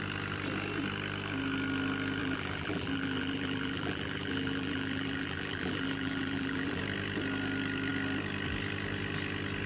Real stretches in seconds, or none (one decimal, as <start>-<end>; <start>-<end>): 0.0-2.2; 6.8-9.7